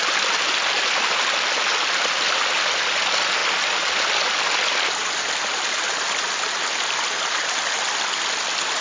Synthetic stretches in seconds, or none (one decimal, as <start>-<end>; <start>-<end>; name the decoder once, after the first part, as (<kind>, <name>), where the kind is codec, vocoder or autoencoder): none